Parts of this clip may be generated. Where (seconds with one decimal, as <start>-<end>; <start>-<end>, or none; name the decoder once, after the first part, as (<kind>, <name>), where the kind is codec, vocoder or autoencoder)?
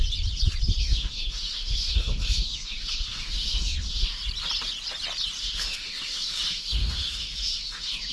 0.8-4.2 (autoencoder, DAC-VAE); 5.4-8.1